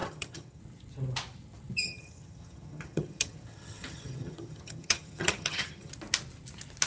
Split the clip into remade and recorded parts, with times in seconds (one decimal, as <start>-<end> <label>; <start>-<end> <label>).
0.0-0.6 remade; 0.6-1.8 recorded; 1.8-5.9 remade; 5.9-6.9 recorded